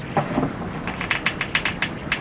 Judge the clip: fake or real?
real